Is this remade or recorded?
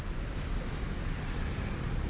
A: recorded